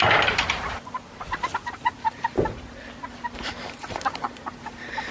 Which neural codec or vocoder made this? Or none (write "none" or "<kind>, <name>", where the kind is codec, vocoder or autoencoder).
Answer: none